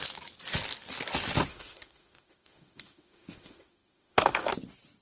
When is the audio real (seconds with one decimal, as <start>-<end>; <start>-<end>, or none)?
0.0-1.5; 4.5-5.0